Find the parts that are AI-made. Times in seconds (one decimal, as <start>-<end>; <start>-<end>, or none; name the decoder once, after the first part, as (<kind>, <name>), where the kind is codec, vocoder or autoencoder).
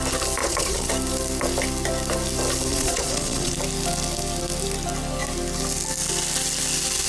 0.4-0.9 (vocoder, Vocos); 2.7-3.5